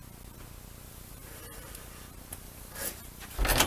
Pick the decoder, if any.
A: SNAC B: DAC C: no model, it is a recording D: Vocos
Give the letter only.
C